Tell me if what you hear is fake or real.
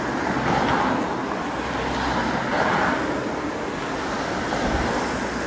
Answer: real